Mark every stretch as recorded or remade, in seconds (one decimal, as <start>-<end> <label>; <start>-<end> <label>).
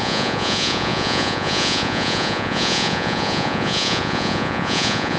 0.0-5.2 remade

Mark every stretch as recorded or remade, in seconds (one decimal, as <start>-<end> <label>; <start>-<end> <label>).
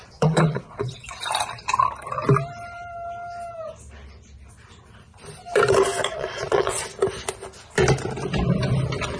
0.0-1.2 remade; 1.2-6.0 recorded; 6.0-6.8 remade; 6.8-9.2 recorded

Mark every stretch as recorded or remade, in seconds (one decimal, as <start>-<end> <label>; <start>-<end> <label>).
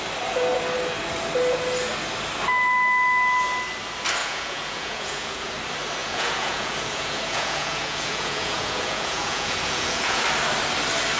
0.0-4.2 recorded; 4.2-5.5 remade; 5.5-6.0 recorded; 6.0-10.2 remade; 10.2-11.2 recorded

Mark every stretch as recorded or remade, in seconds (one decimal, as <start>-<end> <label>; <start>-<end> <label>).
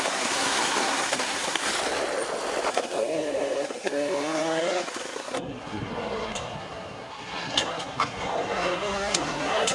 0.0-1.7 remade; 1.7-2.7 recorded; 2.7-9.7 remade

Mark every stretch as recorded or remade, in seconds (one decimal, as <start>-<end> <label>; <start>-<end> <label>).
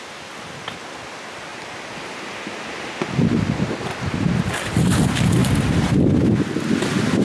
0.0-7.2 recorded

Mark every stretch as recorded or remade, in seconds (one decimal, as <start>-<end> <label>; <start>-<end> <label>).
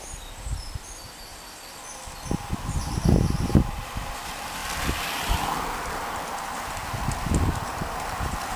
0.0-1.3 remade; 1.3-2.5 recorded; 2.5-4.6 remade; 4.6-5.2 recorded; 5.2-6.8 remade; 6.8-7.6 recorded; 7.6-8.6 remade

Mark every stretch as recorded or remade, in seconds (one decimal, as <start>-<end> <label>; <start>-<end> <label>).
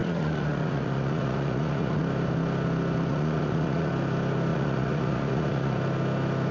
0.0-2.0 remade; 2.0-3.1 recorded; 3.1-3.9 remade; 3.9-4.5 recorded; 4.5-5.8 remade; 5.8-6.5 recorded